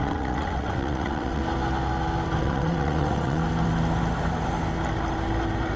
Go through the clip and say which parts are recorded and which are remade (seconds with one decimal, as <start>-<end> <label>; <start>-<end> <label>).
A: 0.0-1.4 remade; 1.4-2.4 recorded; 2.4-3.4 remade; 3.4-5.8 recorded